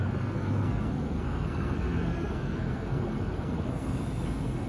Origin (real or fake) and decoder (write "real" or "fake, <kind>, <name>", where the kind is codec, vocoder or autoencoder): fake, codec, SNAC